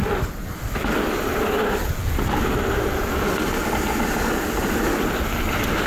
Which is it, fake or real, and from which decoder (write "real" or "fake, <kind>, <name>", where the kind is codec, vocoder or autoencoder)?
real